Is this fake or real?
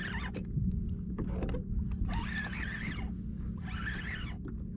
real